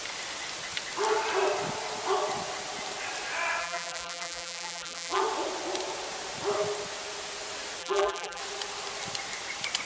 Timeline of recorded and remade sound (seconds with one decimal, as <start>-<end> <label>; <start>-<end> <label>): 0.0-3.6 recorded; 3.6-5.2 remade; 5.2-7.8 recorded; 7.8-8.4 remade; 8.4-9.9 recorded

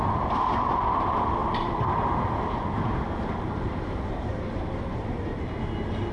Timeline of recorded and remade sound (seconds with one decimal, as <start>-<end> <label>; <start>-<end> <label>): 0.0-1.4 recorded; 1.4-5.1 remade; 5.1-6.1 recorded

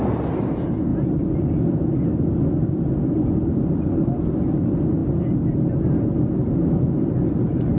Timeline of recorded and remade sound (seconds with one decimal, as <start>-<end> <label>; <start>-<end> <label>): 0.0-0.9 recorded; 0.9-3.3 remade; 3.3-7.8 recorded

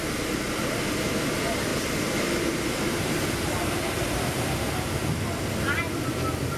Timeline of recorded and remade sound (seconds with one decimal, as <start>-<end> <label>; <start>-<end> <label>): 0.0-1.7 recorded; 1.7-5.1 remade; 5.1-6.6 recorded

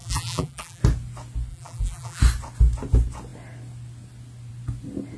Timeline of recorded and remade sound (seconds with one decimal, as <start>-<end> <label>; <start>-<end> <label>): 0.0-0.8 remade; 0.8-1.5 recorded; 1.5-2.2 remade; 2.2-5.2 recorded

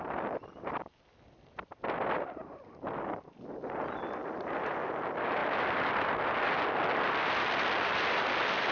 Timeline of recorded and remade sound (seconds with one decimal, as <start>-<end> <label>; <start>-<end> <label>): 0.0-5.4 remade; 5.4-8.0 recorded; 8.0-8.7 remade